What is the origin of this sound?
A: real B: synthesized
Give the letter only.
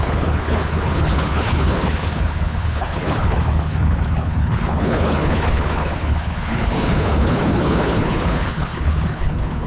B